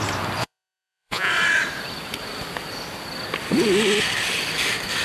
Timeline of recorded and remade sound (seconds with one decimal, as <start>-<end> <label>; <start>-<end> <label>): 0.0-0.4 recorded; 0.4-1.3 remade; 1.3-5.0 recorded